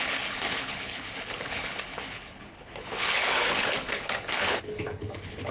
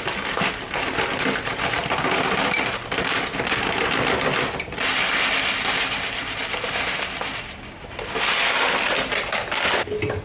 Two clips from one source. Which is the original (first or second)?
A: second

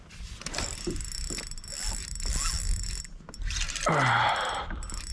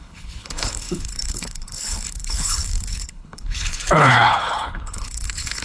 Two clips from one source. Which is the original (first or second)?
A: first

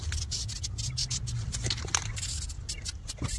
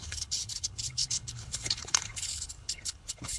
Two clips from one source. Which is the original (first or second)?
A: first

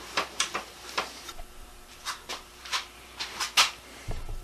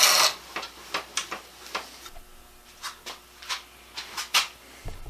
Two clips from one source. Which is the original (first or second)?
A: second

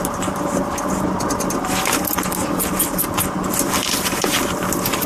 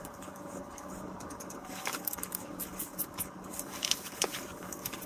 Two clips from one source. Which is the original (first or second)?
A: first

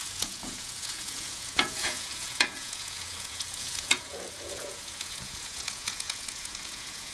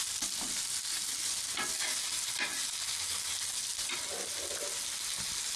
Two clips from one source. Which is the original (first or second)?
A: second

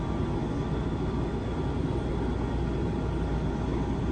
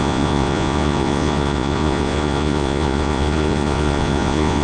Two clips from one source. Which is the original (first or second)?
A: first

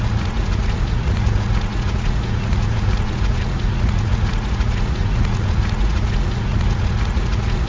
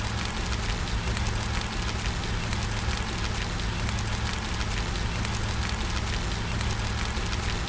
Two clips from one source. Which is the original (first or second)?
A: second